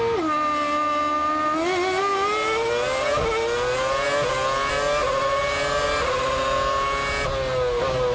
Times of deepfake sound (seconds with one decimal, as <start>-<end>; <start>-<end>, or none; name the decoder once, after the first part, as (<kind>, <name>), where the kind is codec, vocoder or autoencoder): none